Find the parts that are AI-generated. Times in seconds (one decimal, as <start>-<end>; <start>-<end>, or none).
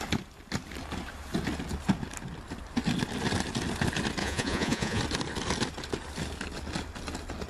4.2-5.0